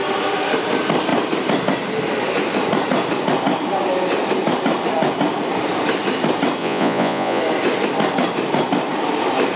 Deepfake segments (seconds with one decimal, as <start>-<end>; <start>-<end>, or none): 6.6-7.4